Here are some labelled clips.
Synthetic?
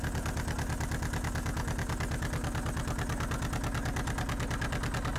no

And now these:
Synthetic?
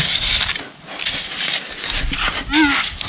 no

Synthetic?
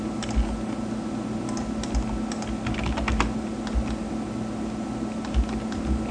no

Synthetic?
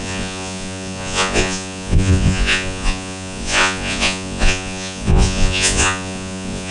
yes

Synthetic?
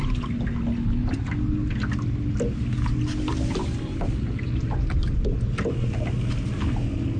no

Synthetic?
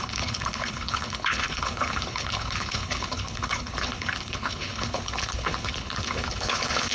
yes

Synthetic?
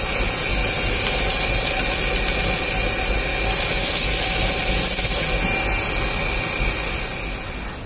no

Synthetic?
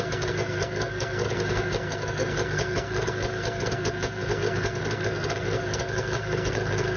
yes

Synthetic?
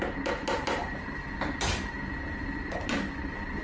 no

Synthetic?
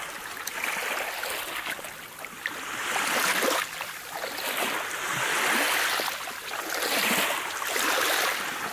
no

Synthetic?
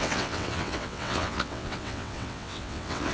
yes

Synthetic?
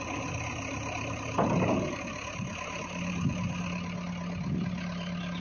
no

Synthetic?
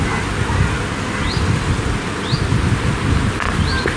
no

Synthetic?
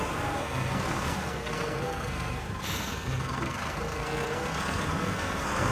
yes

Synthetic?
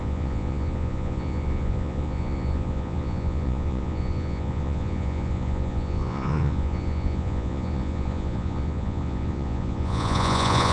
yes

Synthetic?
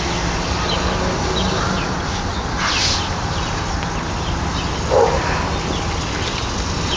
no